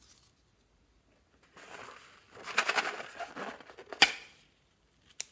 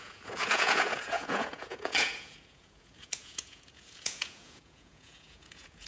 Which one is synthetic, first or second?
second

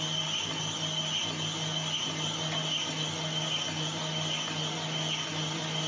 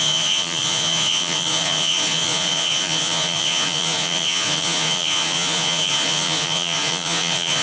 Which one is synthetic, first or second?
second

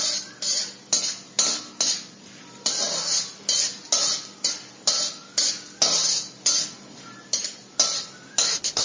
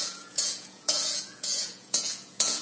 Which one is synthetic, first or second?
second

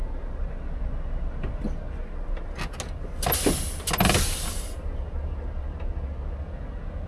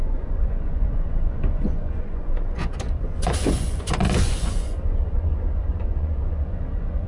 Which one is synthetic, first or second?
second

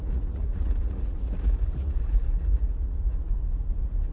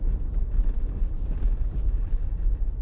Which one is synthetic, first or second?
first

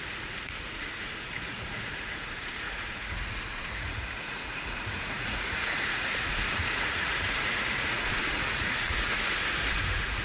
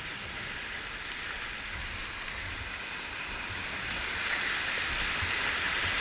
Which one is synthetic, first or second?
first